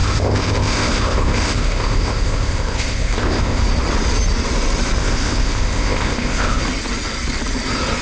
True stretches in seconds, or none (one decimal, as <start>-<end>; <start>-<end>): 3.6-5.0; 6.6-8.0